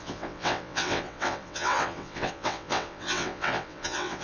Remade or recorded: remade